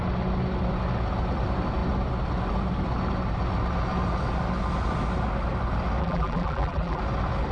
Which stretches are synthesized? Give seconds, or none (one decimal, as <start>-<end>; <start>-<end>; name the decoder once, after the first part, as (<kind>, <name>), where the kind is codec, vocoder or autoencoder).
6.0-7.0 (vocoder, BigVGAN v2)